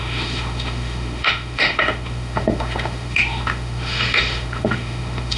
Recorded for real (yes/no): no